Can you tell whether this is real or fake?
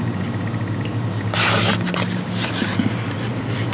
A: real